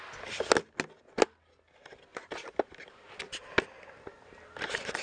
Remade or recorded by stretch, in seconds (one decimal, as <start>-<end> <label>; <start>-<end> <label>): 0.0-2.1 recorded; 2.1-2.7 remade; 2.7-5.0 recorded